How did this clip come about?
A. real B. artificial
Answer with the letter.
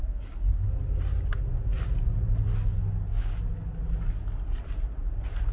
A